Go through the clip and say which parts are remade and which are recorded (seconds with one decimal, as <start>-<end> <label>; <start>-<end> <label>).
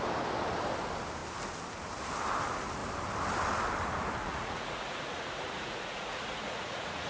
0.0-4.2 recorded; 4.2-7.1 remade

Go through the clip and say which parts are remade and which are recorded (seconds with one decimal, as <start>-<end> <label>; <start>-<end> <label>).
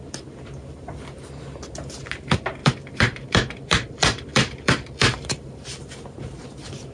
0.0-2.6 recorded; 2.6-5.8 remade; 5.8-6.9 recorded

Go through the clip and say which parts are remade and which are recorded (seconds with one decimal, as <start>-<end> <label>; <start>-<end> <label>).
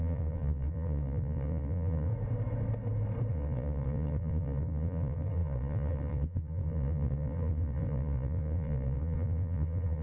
0.0-2.1 remade; 2.1-3.3 recorded; 3.3-10.0 remade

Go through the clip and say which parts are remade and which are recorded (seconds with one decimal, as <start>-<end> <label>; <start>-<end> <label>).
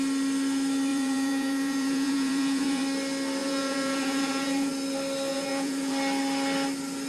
0.0-0.9 recorded; 0.9-2.8 remade; 2.8-3.4 recorded; 3.4-4.7 remade; 4.7-5.3 recorded; 5.3-5.9 remade; 5.9-7.1 recorded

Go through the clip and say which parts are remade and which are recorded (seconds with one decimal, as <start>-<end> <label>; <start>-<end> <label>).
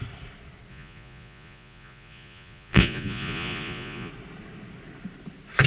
0.0-0.7 recorded; 0.7-4.1 remade; 4.1-5.7 recorded